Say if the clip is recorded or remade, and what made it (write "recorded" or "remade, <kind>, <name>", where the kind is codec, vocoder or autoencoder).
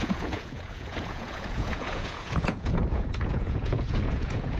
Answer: remade, vocoder, Vocos